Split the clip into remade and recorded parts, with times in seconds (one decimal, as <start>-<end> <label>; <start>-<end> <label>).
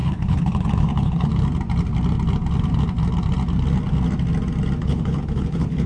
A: 0.0-1.3 remade; 1.3-4.8 recorded; 4.8-5.9 remade